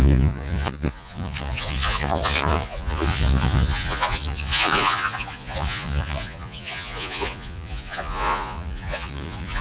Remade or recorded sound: remade